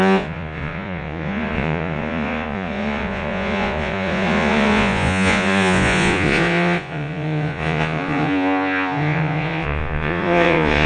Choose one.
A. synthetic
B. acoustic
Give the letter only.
A